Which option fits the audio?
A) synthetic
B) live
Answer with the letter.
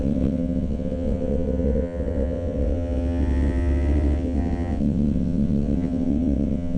A